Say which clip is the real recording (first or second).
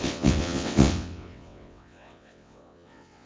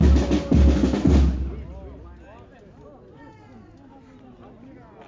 second